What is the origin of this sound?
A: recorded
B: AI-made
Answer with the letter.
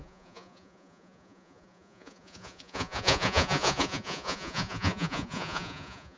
B